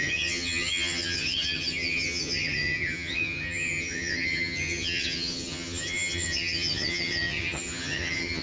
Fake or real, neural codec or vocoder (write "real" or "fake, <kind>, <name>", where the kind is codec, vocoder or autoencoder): fake, vocoder, HiFi-GAN